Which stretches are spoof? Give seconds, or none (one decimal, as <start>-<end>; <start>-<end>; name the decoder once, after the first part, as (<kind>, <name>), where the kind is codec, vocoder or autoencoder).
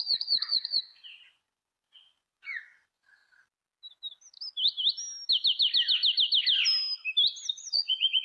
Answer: 0.0-3.2 (vocoder, Vocos); 7.5-8.2